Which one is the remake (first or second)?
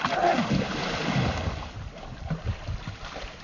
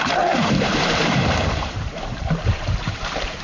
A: second